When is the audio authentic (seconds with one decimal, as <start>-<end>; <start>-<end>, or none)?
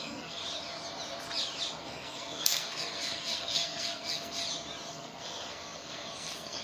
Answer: 0.4-1.8; 4.4-4.9